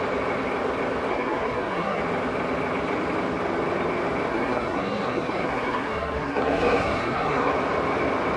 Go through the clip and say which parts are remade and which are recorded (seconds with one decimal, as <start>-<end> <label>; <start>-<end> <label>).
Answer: 0.0-1.1 recorded; 1.1-2.0 remade; 2.0-4.3 recorded; 4.3-7.5 remade; 7.5-8.4 recorded